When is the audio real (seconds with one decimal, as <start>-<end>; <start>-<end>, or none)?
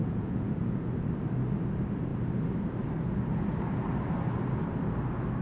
0.9-5.4